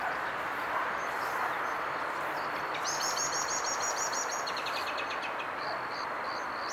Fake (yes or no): no